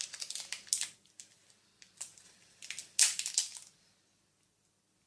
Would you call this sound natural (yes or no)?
yes